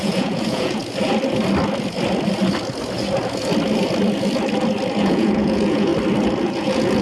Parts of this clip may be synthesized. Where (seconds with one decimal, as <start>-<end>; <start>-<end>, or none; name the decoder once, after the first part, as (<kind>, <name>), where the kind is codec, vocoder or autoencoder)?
0.0-0.8 (vocoder, Vocos); 5.0-5.9; 6.4-7.0